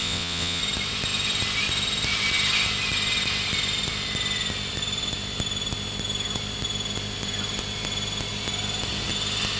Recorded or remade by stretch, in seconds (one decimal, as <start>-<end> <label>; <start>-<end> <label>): 0.0-0.6 remade; 0.6-9.6 recorded